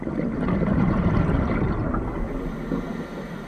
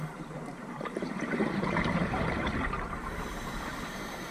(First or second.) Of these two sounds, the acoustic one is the first